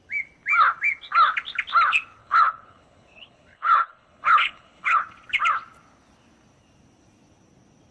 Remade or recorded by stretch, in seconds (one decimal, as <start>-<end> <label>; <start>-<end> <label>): 0.0-2.2 recorded; 2.2-5.0 remade; 5.0-7.9 recorded

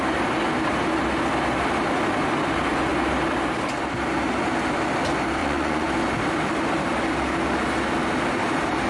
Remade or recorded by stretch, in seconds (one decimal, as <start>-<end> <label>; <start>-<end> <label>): 0.0-5.4 recorded; 5.4-5.9 remade; 5.9-8.9 recorded

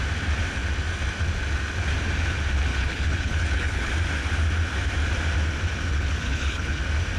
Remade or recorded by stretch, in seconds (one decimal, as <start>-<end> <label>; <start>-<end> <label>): 0.0-2.7 recorded; 2.7-3.9 remade; 3.9-5.9 recorded; 5.9-6.8 remade; 6.8-7.2 recorded

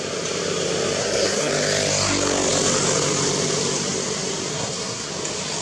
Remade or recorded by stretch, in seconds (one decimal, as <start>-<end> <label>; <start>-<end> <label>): 0.0-1.0 recorded; 1.0-1.5 remade; 1.5-4.5 recorded; 4.5-5.1 remade; 5.1-5.6 recorded